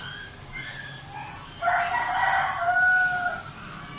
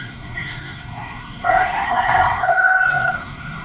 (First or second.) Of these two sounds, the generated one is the second